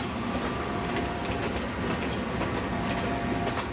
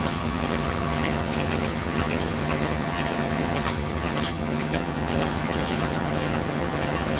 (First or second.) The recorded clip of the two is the first